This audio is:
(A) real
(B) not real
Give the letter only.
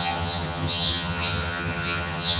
B